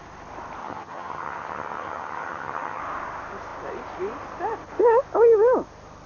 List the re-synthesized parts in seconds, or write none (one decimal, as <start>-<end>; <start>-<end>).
0.6-2.8